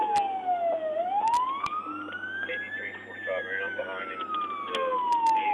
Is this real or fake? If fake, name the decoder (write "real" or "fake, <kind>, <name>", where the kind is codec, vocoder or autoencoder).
real